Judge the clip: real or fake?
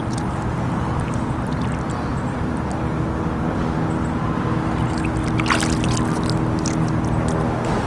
real